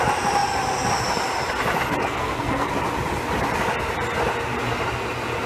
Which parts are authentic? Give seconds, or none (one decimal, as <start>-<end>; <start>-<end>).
0.0-2.0; 2.7-5.5